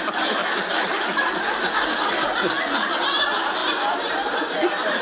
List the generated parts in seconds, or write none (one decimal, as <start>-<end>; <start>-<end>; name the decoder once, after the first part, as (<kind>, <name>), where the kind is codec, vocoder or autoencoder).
none